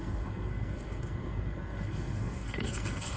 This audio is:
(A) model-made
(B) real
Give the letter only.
A